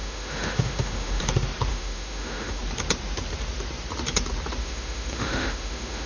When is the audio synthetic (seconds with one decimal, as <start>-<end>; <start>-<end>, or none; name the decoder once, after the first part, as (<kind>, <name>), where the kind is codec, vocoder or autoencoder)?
0.0-1.2 (autoencoder, DAC-VAE); 1.7-2.6; 4.6-6.1